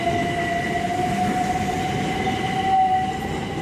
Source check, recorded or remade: recorded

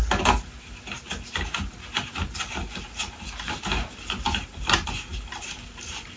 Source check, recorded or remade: recorded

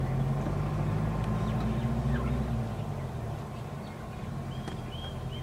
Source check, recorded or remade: recorded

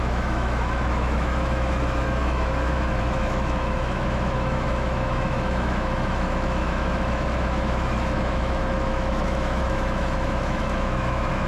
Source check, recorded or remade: remade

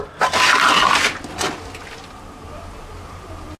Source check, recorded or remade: recorded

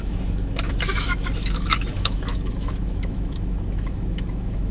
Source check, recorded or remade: remade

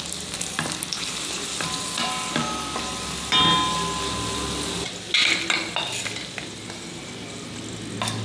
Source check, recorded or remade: recorded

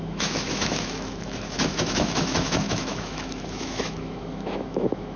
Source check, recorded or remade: remade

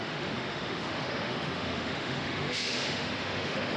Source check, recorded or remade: remade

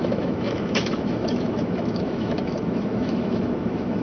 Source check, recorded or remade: remade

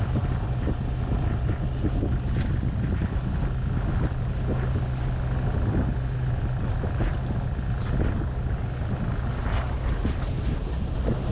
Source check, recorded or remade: recorded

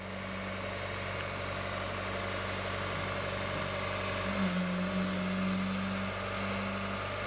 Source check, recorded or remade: recorded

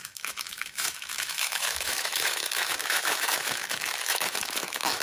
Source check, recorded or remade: remade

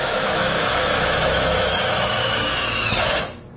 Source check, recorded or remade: remade